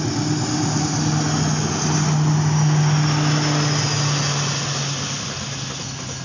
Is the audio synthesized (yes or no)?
no